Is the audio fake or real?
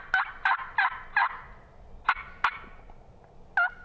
real